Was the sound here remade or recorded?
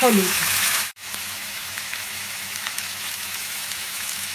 remade